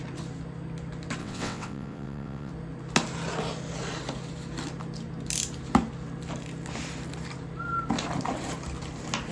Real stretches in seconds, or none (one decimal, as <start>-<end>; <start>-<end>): 0.0-1.2; 2.5-9.3